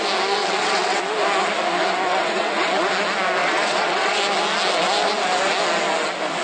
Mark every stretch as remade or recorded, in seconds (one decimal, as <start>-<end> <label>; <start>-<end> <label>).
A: 0.0-0.4 recorded; 0.4-1.0 remade; 1.0-2.1 recorded; 2.1-2.9 remade; 2.9-3.4 recorded; 3.4-4.2 remade; 4.2-6.4 recorded